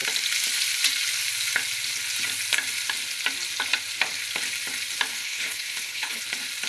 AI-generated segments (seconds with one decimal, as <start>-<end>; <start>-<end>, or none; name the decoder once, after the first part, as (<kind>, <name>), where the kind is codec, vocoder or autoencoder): 5.1-6.2 (codec, HILCodec)